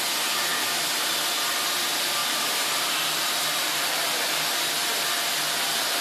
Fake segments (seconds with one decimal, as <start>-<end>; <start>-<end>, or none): 2.2-4.0